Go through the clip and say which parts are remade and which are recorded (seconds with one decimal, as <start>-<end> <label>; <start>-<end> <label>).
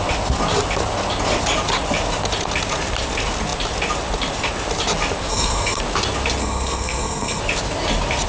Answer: 0.0-5.3 recorded; 5.3-5.8 remade; 5.8-6.4 recorded; 6.4-7.4 remade; 7.4-8.3 recorded